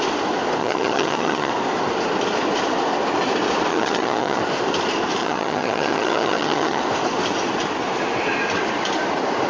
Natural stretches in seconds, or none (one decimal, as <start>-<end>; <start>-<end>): 0.0-0.6; 1.5-3.7; 4.4-5.2; 6.8-9.5